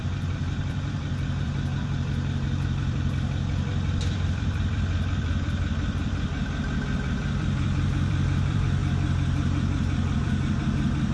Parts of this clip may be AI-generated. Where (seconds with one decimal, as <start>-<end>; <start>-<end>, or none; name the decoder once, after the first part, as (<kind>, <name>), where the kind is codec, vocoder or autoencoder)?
0.0-8.8 (vocoder, BigVGAN v2); 10.2-11.1